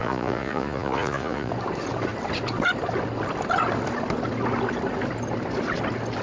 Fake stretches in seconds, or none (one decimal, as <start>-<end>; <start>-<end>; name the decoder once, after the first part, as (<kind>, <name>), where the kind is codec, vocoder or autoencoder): 0.0-1.5 (vocoder, Vocos)